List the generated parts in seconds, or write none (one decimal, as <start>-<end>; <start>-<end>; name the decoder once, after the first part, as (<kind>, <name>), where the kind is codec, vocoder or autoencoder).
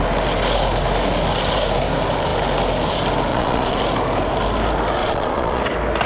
3.3-3.8 (vocoder, Vocos); 5.0-5.6